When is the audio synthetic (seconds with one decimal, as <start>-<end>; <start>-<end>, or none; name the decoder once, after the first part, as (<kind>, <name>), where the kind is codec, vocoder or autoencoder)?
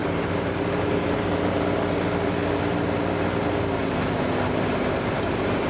0.0-1.3 (vocoder, BigVGAN v2); 3.8-5.7